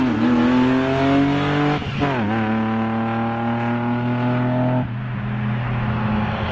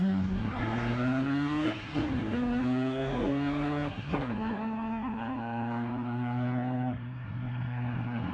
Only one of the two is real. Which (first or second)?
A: first